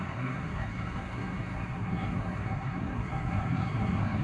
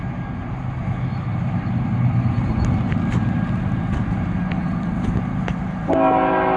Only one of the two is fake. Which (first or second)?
first